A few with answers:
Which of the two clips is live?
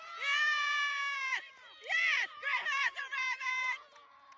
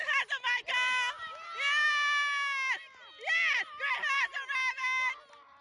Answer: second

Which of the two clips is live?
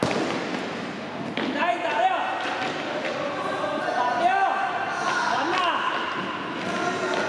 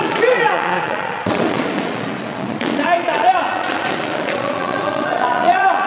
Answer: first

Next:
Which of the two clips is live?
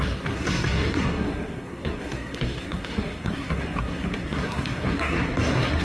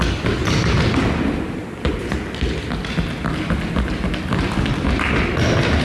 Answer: second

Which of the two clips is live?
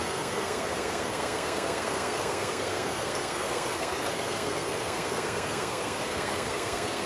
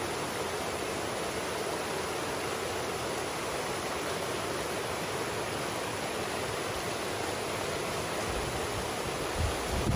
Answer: second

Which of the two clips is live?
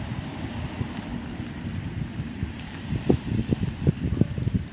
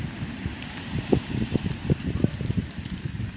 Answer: first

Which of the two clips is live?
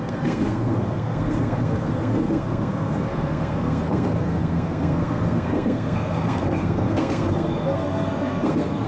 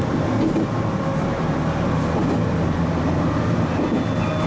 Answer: second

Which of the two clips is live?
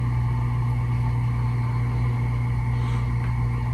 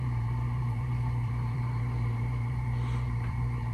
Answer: first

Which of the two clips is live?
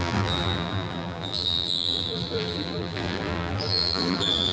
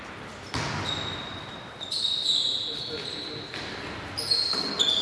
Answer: second